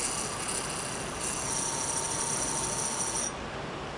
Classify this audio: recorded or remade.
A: recorded